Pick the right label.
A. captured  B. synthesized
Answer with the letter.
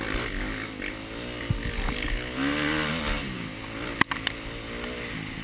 A